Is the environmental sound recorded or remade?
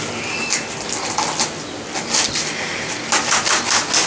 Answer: recorded